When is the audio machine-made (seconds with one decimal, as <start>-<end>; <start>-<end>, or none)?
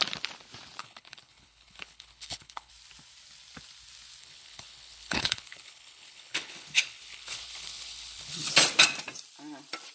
0.8-2.7; 4.2-8.5